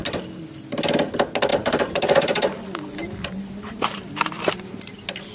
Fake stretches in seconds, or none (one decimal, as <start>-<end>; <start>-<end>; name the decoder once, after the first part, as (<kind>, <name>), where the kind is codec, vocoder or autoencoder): 1.5-4.7 (vocoder, BigVGAN v2)